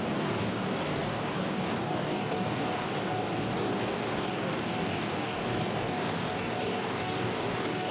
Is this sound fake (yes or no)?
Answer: yes